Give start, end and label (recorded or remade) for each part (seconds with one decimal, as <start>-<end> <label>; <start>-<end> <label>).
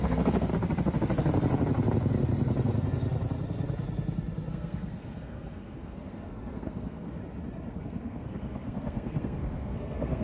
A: 0.0-0.5 remade; 0.5-4.5 recorded; 4.5-7.2 remade; 7.2-7.7 recorded; 7.7-10.2 remade